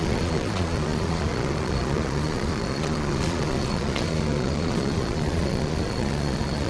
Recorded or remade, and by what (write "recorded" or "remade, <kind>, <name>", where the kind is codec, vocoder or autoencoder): remade, vocoder, Vocos